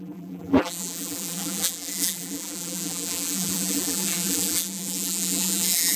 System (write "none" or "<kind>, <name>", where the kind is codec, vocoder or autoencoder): vocoder, BigVGAN v2